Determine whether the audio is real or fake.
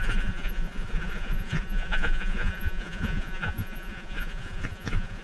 fake